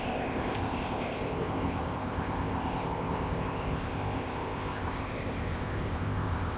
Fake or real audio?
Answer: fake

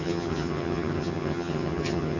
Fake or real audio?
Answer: fake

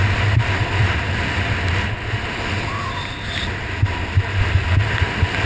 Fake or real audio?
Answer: real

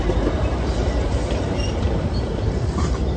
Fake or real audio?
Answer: fake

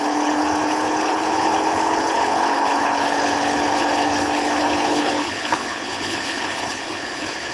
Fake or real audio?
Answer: fake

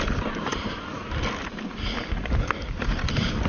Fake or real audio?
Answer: real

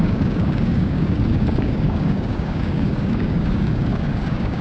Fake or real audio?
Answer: fake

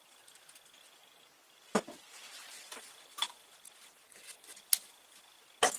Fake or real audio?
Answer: real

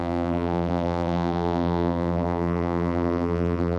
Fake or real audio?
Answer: fake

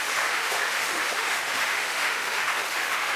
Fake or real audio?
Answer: fake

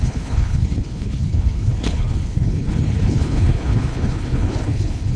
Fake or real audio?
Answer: fake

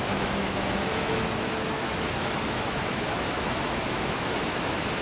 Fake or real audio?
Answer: fake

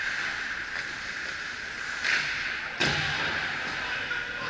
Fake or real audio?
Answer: real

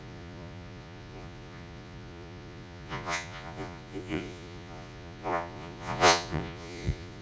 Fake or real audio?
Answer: fake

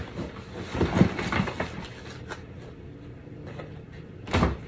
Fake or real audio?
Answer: real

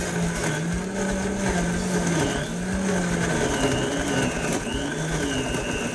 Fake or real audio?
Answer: real